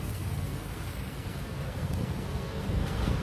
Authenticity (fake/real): fake